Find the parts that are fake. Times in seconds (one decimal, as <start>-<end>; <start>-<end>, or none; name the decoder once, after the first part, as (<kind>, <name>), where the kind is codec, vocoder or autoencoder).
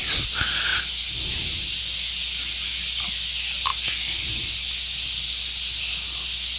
none